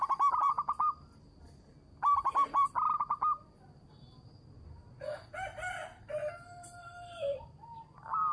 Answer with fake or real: real